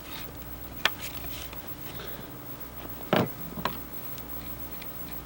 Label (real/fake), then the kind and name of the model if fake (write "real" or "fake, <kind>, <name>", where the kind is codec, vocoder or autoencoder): real